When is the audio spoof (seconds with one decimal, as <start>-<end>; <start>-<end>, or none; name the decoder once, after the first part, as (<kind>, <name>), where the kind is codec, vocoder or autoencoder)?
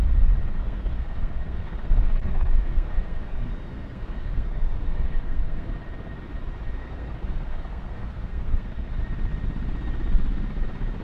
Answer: 0.5-5.7 (codec, SNAC); 6.8-8.9